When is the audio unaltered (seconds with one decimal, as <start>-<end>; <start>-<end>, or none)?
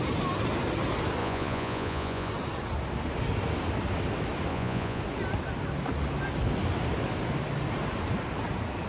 0.0-1.2; 2.3-4.5; 5.0-8.9